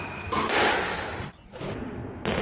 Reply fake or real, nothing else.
real